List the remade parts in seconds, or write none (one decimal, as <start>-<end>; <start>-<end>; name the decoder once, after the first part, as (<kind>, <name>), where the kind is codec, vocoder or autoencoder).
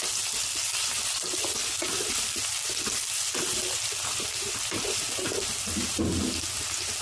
none